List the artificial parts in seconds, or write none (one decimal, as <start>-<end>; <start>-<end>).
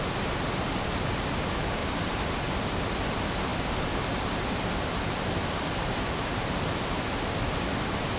none